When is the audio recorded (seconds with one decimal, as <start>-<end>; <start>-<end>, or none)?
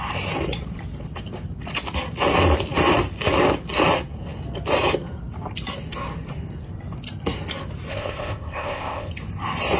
0.0-7.9; 9.1-9.8